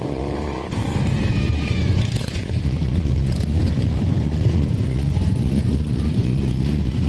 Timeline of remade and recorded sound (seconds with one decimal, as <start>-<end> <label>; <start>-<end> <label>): 0.0-0.8 remade; 0.8-1.4 recorded; 1.4-7.1 remade